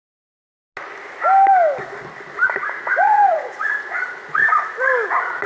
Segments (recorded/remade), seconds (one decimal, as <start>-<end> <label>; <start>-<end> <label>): 0.0-2.7 recorded; 2.7-4.4 remade; 4.4-5.1 recorded; 5.1-5.5 remade